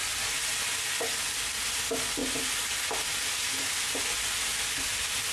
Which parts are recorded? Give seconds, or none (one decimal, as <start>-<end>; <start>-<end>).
0.0-5.3